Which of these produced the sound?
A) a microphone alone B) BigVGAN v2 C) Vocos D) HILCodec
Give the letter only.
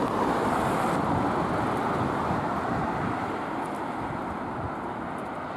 A